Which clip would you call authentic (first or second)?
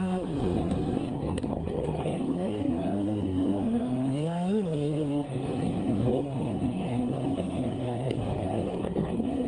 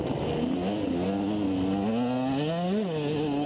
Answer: second